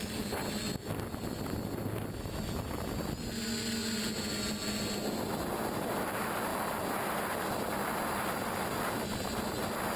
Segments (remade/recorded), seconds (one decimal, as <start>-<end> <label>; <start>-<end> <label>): 0.0-10.0 recorded